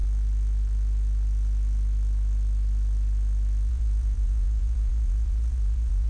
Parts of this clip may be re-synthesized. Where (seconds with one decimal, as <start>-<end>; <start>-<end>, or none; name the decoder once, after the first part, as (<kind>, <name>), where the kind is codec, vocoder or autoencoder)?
3.7-6.1 (vocoder, Vocos)